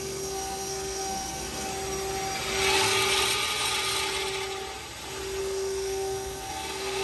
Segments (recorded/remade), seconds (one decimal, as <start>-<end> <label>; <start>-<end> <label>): 0.0-1.7 remade; 1.7-5.4 recorded; 5.4-7.0 remade